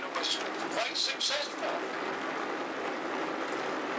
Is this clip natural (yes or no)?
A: yes